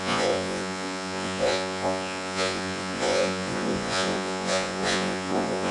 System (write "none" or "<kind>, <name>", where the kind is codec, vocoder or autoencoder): vocoder, Vocos